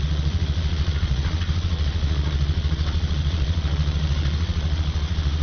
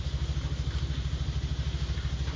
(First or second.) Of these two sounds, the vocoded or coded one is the first